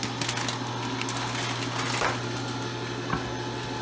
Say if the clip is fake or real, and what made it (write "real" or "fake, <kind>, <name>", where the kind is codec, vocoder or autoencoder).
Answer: real